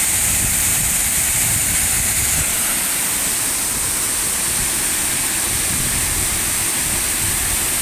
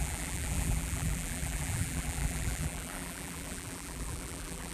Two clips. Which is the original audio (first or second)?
first